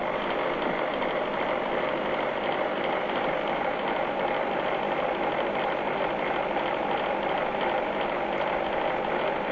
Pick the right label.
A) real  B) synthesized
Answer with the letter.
A